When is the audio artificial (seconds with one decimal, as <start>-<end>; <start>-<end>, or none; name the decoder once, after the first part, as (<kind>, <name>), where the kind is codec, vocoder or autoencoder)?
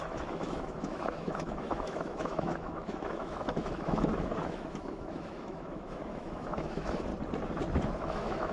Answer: 0.0-7.1 (autoencoder, DAC-VAE); 8.0-8.5